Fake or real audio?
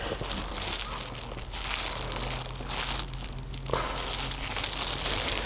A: real